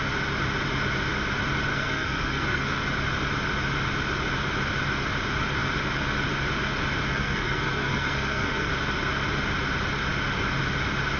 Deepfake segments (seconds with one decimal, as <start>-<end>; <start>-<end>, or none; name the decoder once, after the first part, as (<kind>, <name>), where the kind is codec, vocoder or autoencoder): 1.7-2.8 (codec, SNAC); 7.1-8.7